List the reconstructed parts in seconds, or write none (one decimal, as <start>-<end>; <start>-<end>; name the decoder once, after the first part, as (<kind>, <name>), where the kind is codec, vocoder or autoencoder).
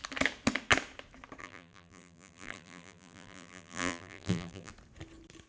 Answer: 1.4-4.7 (vocoder, BigVGAN v2)